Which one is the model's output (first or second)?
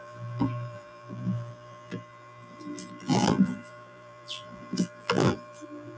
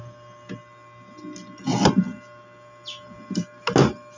first